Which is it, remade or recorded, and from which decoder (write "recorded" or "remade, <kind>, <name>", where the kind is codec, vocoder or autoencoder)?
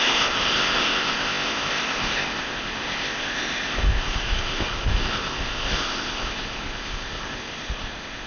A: remade, codec, ZipCodec